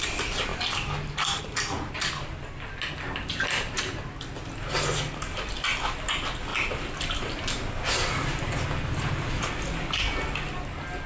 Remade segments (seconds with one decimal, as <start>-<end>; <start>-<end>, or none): none